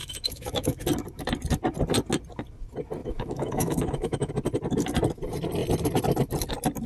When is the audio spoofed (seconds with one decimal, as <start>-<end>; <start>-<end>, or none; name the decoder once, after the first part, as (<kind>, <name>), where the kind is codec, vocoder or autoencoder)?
0.0-0.8 (autoencoder, DAC-VAE); 3.0-4.3